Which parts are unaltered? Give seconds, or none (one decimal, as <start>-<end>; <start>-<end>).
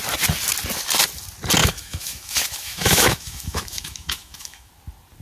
0.0-1.6; 4.7-5.2